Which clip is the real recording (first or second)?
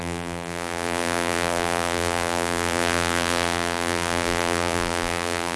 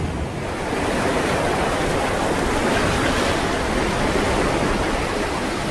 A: second